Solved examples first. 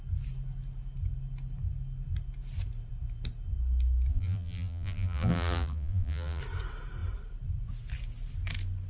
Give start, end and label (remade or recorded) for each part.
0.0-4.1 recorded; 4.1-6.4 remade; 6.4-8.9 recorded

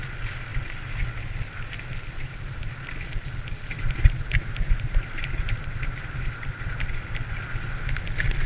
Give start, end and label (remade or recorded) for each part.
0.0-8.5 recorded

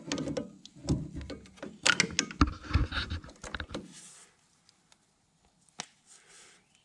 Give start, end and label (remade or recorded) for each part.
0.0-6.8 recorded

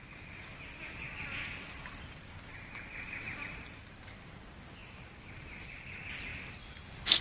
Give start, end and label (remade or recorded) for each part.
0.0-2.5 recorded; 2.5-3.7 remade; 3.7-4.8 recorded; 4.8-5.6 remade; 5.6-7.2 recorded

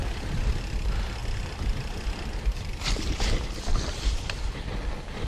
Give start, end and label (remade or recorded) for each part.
0.0-0.5 remade; 0.5-1.2 recorded; 1.2-4.4 remade; 4.4-5.3 recorded